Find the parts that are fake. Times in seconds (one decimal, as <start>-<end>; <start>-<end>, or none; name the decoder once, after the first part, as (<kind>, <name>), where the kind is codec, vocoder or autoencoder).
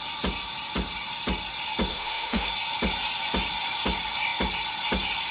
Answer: 1.9-2.5 (autoencoder, DAC-VAE)